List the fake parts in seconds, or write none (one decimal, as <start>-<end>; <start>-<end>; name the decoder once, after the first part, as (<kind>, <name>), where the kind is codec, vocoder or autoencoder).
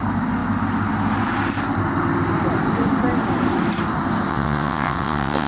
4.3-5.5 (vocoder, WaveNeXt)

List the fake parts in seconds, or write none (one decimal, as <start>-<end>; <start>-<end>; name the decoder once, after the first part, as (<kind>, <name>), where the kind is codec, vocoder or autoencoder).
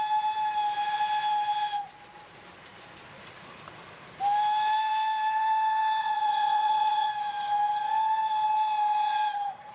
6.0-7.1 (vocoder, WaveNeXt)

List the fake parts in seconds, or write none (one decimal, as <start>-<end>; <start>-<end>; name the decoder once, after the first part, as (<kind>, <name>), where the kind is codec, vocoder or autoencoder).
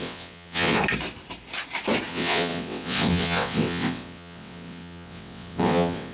0.0-0.8 (vocoder, WaveNeXt); 2.1-6.1